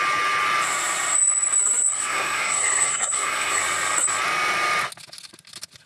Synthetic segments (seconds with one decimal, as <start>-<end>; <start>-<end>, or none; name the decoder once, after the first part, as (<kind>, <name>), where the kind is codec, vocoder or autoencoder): 1.9-3.6 (codec, SNAC)